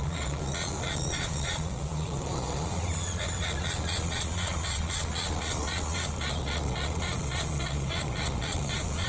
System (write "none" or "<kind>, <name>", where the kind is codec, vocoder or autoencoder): vocoder, Vocos